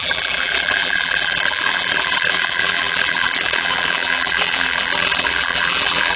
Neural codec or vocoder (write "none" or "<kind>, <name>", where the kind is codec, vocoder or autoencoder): vocoder, BigVGAN v2